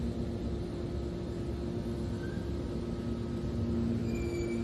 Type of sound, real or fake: real